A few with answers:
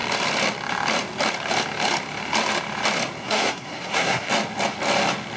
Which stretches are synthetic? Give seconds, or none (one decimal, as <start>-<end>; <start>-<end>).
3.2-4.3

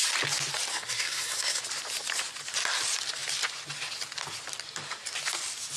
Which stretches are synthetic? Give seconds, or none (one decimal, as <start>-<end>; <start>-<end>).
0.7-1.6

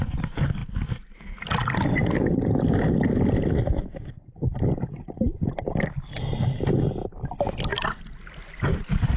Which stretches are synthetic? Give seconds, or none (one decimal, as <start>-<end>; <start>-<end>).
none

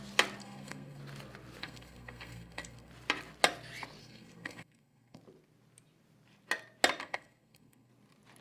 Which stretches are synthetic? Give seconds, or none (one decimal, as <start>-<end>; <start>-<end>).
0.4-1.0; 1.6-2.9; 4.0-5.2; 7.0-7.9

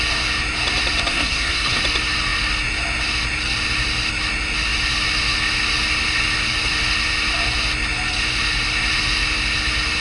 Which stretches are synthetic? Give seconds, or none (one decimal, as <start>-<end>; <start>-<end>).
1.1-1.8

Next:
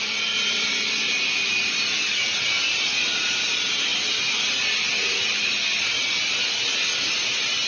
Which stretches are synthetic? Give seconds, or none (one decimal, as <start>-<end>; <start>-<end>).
none